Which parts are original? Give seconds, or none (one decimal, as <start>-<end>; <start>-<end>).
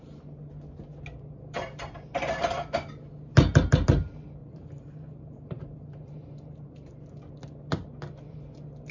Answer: 0.0-4.4; 6.9-8.9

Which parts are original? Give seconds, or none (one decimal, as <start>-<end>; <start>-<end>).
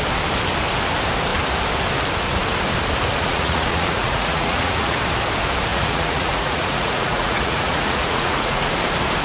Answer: 0.0-3.1; 5.0-5.7; 8.7-9.2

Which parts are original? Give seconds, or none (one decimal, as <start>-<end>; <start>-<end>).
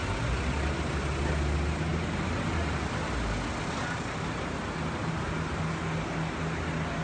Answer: 0.0-7.0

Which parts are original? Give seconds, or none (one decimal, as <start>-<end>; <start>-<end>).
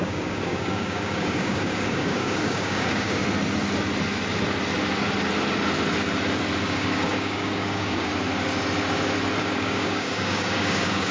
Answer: 3.2-6.6; 8.1-9.4